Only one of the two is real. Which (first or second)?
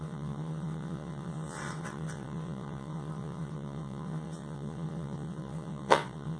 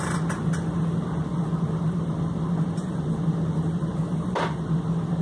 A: second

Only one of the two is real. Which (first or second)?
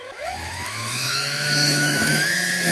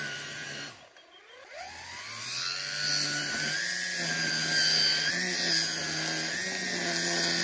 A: second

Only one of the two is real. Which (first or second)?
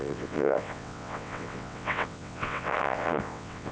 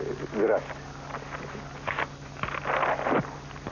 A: second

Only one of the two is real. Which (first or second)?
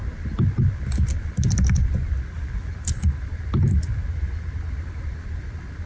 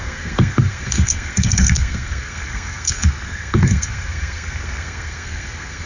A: first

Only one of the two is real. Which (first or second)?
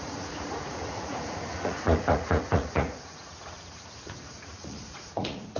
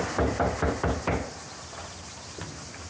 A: second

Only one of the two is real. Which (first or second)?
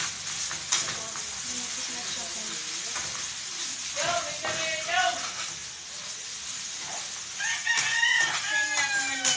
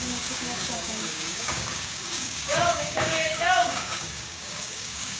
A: first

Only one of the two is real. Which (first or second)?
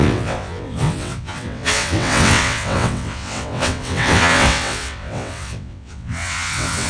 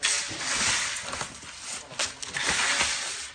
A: second